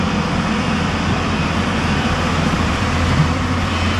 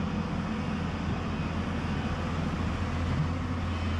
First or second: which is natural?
second